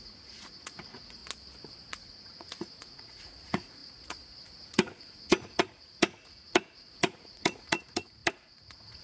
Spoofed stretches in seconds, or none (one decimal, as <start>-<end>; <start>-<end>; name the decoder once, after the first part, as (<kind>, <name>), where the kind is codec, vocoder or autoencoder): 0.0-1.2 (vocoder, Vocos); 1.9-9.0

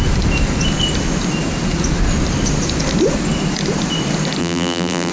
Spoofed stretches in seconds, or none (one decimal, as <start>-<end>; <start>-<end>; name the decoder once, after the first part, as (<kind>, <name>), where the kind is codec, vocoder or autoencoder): 4.4-5.1 (vocoder, BigVGAN v2)

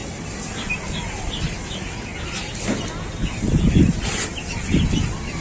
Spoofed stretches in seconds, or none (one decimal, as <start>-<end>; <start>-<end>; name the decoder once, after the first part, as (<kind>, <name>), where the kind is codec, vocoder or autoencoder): none

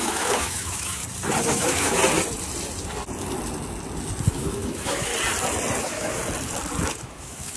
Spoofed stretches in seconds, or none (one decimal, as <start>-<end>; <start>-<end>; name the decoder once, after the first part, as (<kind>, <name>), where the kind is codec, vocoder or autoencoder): 0.0-1.0 (autoencoder, DAC-VAE); 1.5-2.0; 4.3-5.1; 5.8-6.2; 6.9-7.6